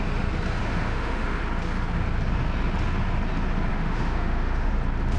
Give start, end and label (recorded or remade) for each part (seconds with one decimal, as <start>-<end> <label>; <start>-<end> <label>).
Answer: 0.0-0.6 recorded; 0.6-1.4 remade; 1.4-3.7 recorded; 3.7-4.7 remade; 4.7-5.2 recorded